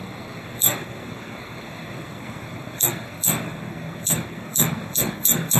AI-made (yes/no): yes